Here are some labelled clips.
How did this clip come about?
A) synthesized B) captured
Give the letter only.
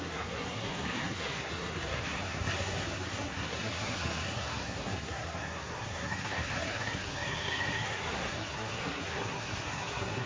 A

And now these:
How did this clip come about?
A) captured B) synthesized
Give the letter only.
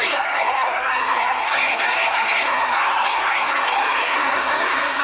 B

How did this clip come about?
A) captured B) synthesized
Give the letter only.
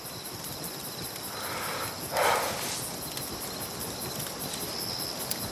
A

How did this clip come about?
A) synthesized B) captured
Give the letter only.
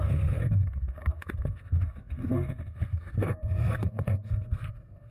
A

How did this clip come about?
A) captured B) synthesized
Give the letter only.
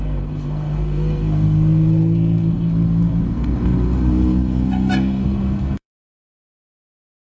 B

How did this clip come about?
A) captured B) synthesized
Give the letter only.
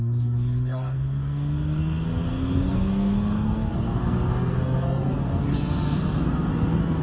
B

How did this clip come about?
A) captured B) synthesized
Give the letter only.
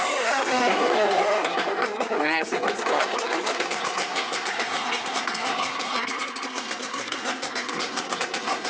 B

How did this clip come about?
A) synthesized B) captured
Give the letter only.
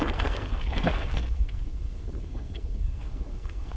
A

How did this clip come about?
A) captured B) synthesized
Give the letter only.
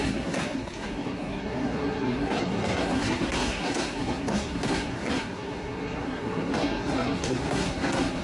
B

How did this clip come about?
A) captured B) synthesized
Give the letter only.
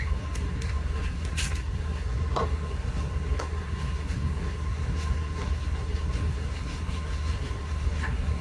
B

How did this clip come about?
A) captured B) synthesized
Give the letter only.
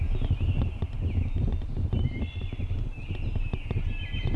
A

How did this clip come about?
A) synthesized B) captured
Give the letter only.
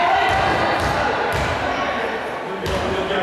B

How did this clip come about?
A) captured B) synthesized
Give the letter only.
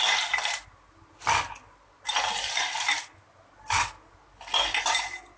A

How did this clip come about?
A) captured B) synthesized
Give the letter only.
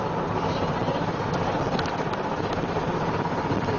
A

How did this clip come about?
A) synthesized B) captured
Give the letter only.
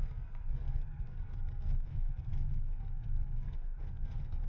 A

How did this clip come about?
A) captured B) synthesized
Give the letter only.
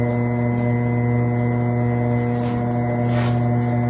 A